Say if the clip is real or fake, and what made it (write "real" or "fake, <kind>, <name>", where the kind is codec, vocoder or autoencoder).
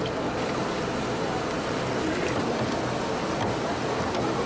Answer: real